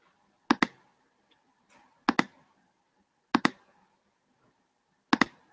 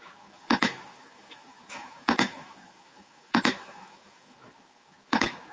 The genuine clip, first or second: first